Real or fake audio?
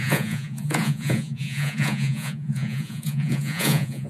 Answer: fake